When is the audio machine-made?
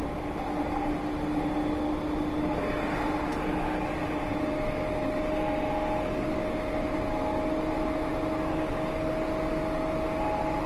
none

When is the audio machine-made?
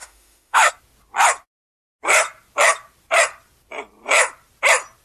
0.0-0.7